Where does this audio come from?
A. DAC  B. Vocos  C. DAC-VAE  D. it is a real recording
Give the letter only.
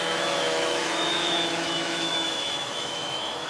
C